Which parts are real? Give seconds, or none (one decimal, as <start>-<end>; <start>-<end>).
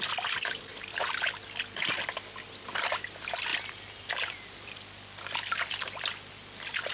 0.0-6.9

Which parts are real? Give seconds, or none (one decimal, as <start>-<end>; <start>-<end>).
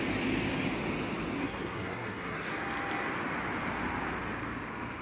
0.0-1.4; 2.5-5.0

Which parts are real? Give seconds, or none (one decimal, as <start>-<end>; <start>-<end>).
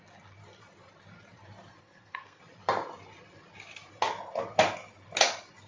0.0-1.8; 2.4-5.7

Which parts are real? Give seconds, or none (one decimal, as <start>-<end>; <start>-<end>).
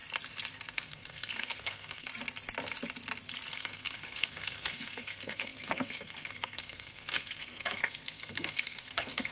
0.0-0.7; 2.1-3.5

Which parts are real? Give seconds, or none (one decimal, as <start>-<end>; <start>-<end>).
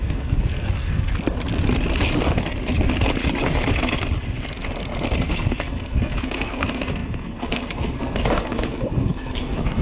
1.1-5.2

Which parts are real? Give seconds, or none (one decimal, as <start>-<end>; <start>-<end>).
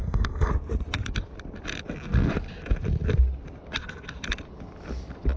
0.5-5.4